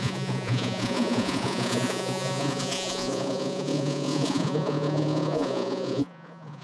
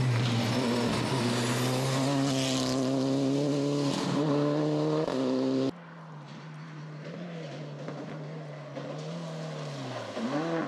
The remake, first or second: first